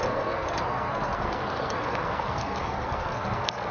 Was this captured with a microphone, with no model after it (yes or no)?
no